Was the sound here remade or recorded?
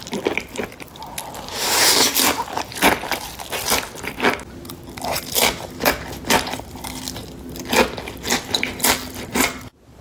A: recorded